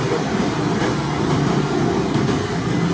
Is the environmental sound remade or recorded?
recorded